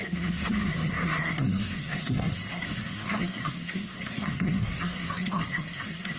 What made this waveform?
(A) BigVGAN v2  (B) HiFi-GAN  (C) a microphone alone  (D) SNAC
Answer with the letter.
D